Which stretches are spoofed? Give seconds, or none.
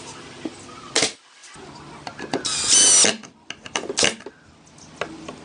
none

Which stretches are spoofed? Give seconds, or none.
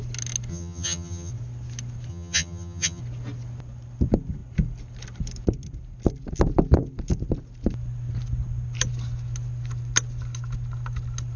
0.5-1.3 (vocoder, HiFi-GAN); 2.1-3.0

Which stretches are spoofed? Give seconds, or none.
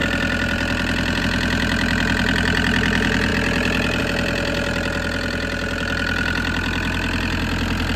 none